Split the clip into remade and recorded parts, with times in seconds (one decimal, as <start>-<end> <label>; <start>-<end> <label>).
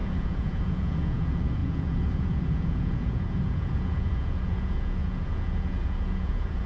0.0-6.7 remade